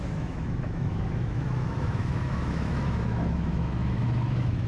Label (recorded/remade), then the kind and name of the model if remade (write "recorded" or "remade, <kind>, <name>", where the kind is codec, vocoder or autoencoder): remade, autoencoder, DAC-VAE